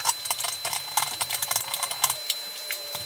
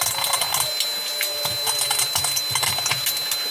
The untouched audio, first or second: second